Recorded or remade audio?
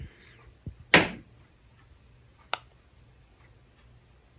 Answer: recorded